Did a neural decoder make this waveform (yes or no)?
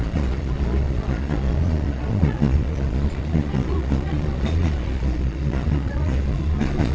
yes